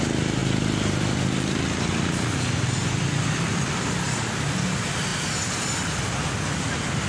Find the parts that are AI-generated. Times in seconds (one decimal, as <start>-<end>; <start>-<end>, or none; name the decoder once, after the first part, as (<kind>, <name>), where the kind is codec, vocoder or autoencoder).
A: none